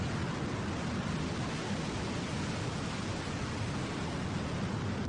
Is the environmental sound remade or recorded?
recorded